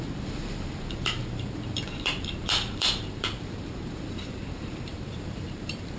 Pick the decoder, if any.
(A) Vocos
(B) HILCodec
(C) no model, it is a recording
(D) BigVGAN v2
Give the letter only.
D